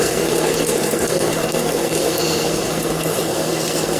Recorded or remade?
remade